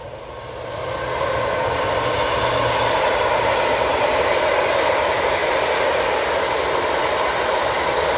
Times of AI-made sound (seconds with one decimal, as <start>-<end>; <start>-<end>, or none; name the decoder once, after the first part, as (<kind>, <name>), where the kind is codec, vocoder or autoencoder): none